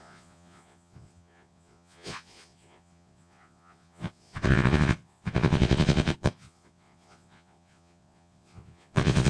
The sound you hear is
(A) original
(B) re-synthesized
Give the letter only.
B